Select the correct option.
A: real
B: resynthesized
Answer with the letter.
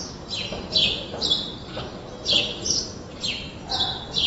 A